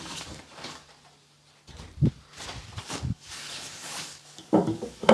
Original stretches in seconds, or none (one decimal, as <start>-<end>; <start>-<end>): 0.9-2.8